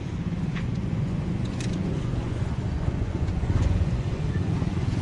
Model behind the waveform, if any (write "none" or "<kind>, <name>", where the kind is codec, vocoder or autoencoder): vocoder, Vocos